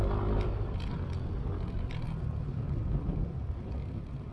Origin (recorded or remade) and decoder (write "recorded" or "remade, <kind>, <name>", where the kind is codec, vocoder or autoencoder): recorded